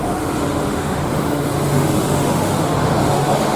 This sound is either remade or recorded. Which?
remade